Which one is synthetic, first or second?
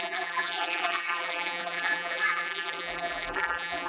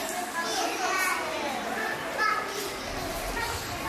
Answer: first